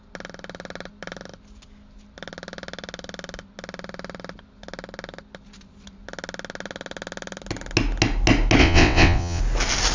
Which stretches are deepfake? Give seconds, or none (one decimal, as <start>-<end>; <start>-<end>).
8.6-9.4